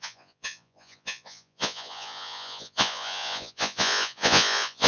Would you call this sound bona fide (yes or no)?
no